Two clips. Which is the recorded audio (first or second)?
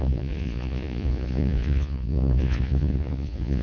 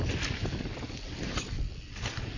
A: second